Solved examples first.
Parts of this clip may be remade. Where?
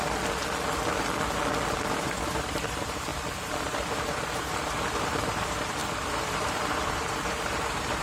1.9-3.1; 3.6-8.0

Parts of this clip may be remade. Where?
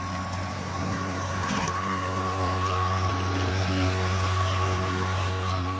0.5-3.1; 3.5-5.8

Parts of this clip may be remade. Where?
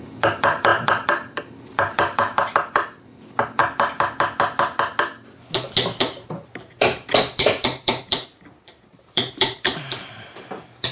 0.0-3.6; 7.3-10.9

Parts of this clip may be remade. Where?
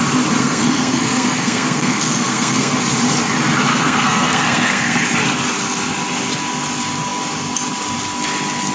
0.4-2.8; 3.7-5.0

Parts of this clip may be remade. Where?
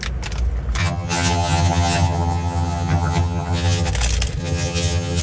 0.8-3.9; 4.4-5.2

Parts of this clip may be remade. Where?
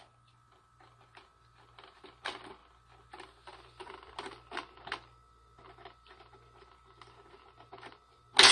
none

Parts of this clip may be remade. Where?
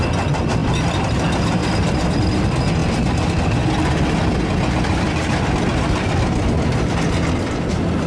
0.6-1.2; 1.6-2.4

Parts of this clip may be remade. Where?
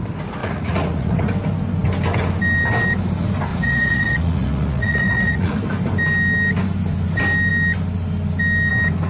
0.4-1.3; 3.5-5.6